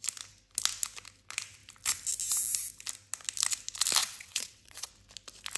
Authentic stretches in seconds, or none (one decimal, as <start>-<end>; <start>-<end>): 0.0-4.0; 4.9-5.6